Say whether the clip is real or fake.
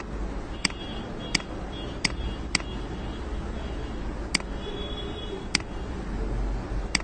real